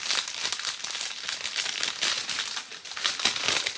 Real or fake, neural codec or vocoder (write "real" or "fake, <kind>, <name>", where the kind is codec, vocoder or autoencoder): real